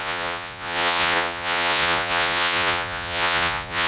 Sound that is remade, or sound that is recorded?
remade